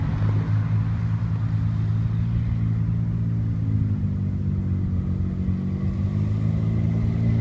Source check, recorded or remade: recorded